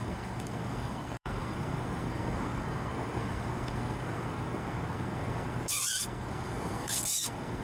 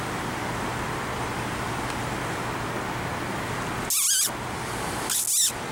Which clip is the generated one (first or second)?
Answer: first